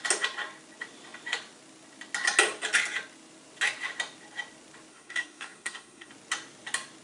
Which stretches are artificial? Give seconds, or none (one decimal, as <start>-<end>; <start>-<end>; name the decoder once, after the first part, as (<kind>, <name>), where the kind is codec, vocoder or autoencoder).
4.9-6.1 (codec, SNAC)

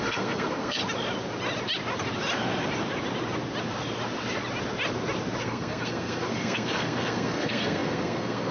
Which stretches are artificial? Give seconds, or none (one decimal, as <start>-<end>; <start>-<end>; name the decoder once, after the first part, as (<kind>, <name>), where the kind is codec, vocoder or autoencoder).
0.0-0.8 (codec, SNAC); 5.4-8.5

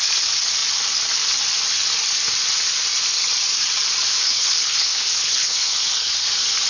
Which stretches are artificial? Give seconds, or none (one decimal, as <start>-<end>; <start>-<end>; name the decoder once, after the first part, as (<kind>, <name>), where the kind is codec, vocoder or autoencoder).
4.2-6.3 (codec, HILCodec)